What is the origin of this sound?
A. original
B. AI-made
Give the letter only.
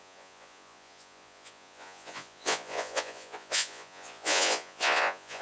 B